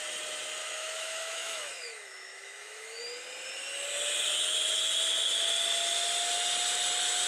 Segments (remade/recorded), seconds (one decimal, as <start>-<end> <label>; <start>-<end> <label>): 0.0-0.6 recorded; 0.6-3.0 remade; 3.0-7.3 recorded